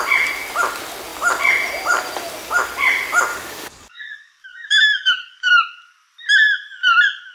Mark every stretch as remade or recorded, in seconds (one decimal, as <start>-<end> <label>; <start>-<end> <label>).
0.0-3.3 recorded; 3.3-5.5 remade; 5.5-7.3 recorded